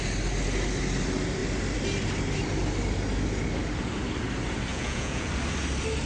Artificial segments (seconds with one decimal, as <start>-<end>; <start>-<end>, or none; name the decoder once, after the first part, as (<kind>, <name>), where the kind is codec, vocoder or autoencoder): 4.7-5.3 (vocoder, Vocos)